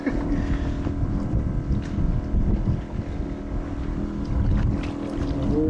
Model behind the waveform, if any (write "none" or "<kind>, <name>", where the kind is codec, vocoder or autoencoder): none